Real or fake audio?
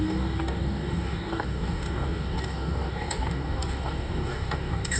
fake